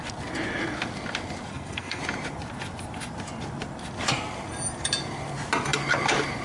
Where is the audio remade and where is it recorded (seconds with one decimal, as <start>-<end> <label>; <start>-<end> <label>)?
0.0-1.5 recorded; 1.5-2.0 remade; 2.0-6.4 recorded